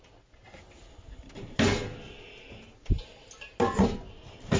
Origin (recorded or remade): recorded